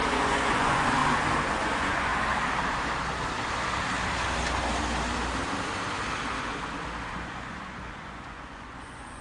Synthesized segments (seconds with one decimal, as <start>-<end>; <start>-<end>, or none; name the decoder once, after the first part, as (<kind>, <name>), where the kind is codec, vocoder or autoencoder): 0.0-1.0 (vocoder, Vocos); 1.5-2.1; 7.1-9.2